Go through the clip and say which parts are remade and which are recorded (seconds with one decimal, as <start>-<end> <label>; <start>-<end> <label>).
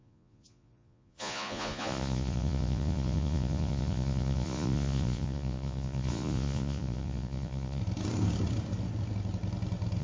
0.0-7.8 remade; 7.8-10.0 recorded